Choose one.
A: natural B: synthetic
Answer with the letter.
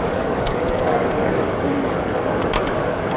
B